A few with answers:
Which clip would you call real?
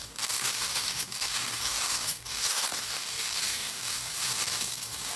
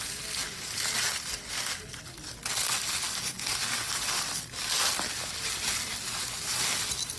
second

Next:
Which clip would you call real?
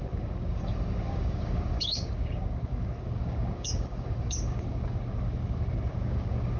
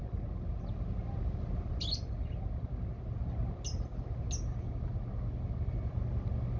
second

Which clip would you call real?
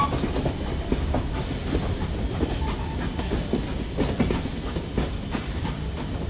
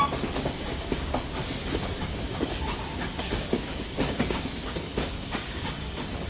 first